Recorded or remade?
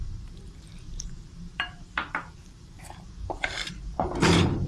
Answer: remade